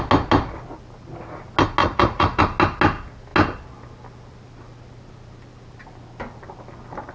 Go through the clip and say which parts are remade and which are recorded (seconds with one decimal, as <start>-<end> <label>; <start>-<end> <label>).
0.0-1.8 recorded; 1.8-2.4 remade; 2.4-7.1 recorded